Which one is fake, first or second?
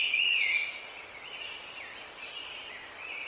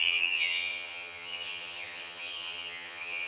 second